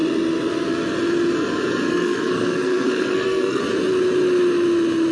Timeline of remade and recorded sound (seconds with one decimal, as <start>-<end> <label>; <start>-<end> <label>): 0.0-1.9 recorded; 1.9-3.6 remade; 3.6-5.1 recorded